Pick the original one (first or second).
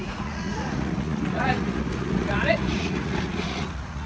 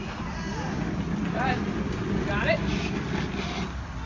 second